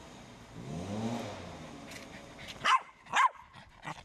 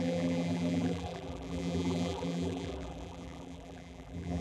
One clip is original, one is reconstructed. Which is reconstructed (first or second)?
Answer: second